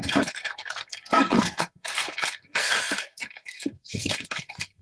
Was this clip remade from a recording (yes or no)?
yes